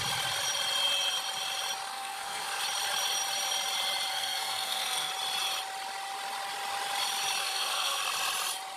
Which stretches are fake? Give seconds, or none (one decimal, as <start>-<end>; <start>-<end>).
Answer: 1.9-2.6; 4.1-5.1; 7.4-8.0